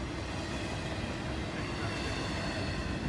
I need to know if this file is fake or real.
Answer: real